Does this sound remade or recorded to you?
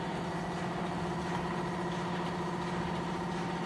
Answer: recorded